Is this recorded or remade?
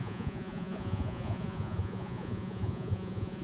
remade